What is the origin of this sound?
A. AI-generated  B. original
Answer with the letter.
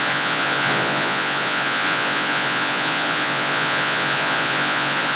A